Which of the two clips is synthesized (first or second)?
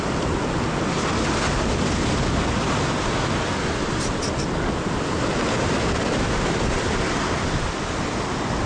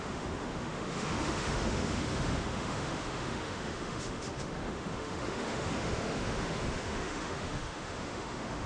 second